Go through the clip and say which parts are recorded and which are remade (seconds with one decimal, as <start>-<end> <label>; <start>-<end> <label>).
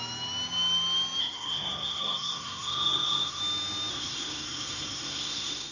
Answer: 0.0-1.2 recorded; 1.2-3.4 remade; 3.4-3.9 recorded; 3.9-5.7 remade